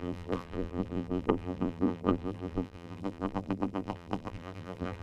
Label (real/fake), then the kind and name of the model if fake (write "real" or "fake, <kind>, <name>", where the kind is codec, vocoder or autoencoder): fake, vocoder, BigVGAN v2